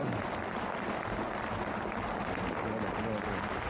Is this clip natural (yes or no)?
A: yes